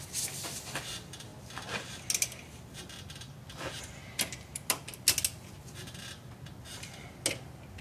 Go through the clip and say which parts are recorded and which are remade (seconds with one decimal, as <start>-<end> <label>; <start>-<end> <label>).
0.0-7.8 recorded